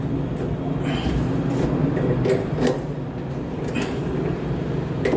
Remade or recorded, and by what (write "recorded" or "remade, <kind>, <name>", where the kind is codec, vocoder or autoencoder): recorded